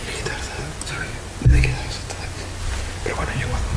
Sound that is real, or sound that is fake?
real